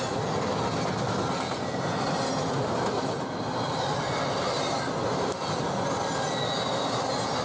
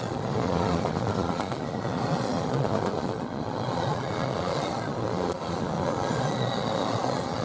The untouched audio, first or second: first